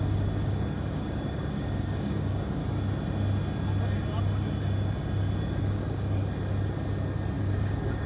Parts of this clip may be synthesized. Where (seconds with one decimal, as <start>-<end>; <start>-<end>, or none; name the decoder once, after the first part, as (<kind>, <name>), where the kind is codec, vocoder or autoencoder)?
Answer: 0.0-2.6 (codec, DAC); 5.6-6.2; 7.4-8.1